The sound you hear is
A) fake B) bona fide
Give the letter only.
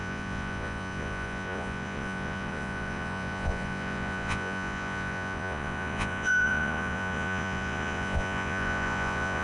A